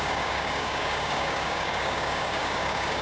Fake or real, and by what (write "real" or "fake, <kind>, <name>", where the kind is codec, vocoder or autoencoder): fake, codec, DAC